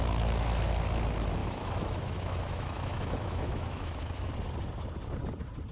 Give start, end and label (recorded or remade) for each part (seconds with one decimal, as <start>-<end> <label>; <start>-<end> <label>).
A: 0.0-1.4 recorded; 1.4-4.3 remade; 4.3-5.7 recorded